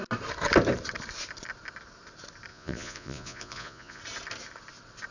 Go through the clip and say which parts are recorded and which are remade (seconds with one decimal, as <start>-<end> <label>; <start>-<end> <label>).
0.0-2.5 recorded; 2.5-4.0 remade; 4.0-5.1 recorded